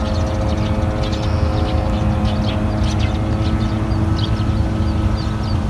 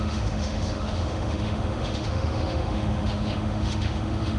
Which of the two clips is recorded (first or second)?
first